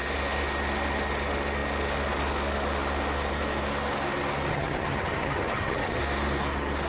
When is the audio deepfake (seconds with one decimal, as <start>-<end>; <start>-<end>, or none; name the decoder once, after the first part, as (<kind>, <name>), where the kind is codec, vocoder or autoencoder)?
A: 4.5-6.0 (vocoder, HiFi-GAN)